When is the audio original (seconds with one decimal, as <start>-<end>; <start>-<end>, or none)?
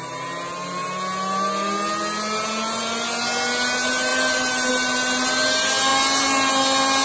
0.0-7.0